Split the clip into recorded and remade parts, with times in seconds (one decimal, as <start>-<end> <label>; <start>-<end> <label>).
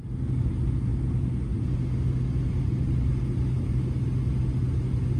0.0-5.2 recorded